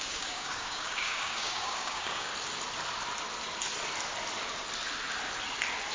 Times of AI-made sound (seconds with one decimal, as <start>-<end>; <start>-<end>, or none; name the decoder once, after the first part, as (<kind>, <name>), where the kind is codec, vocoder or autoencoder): 0.0-2.3 (codec, DAC)